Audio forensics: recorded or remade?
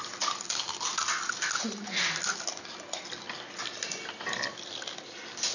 recorded